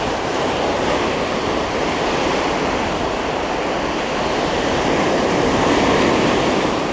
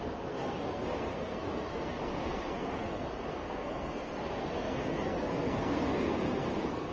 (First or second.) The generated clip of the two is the second